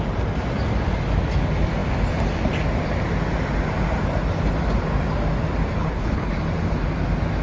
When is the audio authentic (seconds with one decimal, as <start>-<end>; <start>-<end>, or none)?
0.0-5.8; 6.3-7.4